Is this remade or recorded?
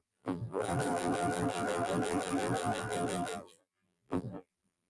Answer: remade